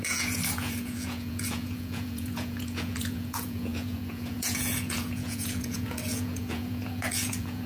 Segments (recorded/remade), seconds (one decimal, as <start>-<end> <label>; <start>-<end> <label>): 0.0-7.7 remade